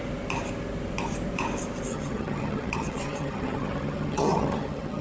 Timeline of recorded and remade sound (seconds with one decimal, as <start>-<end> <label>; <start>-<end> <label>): 0.0-1.9 recorded; 1.9-5.0 remade